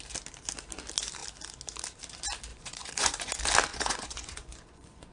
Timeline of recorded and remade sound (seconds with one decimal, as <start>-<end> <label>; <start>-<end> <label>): 0.0-2.5 recorded; 2.5-3.3 remade; 3.3-3.7 recorded; 3.7-5.1 remade